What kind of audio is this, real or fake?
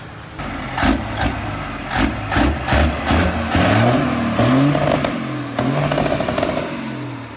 real